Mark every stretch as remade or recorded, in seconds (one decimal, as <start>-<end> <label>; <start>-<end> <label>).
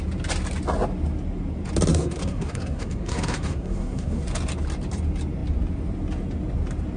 0.0-1.9 recorded; 1.9-4.2 remade; 4.2-7.0 recorded